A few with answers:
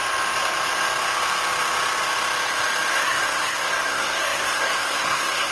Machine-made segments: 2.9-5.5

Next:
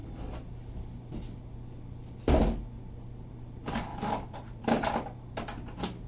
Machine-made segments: none

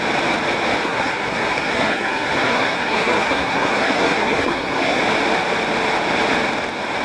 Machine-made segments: 0.8-5.0

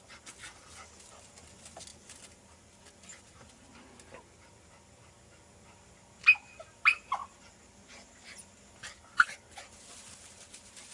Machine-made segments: none

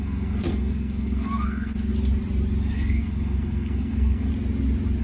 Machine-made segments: 0.0-1.9; 2.7-4.3